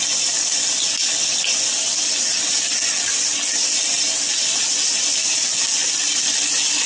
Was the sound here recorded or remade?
recorded